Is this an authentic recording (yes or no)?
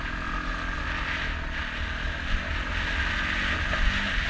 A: yes